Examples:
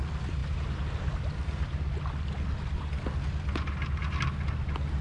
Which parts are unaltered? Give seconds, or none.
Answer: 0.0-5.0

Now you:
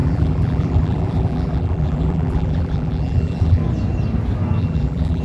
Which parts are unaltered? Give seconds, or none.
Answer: 3.6-4.6

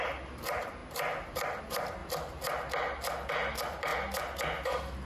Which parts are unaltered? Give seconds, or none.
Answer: 0.8-1.6; 2.0-3.3; 3.9-5.1

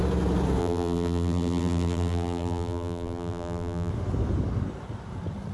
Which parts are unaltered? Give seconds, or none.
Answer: 0.0-0.6; 3.9-5.5

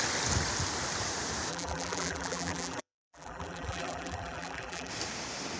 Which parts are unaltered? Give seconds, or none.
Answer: 0.0-1.5; 4.9-5.6

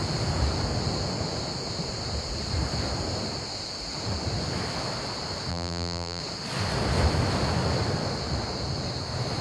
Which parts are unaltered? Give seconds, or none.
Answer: 0.0-5.5; 6.2-9.4